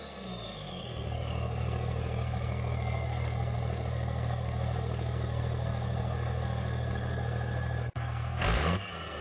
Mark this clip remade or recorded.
remade